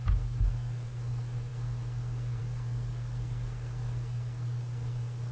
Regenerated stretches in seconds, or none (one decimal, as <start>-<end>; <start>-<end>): 0.0-5.3